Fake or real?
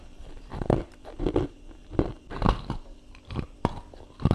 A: fake